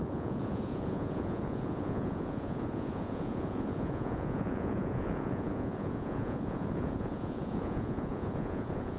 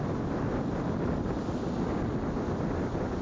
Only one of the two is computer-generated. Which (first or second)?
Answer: first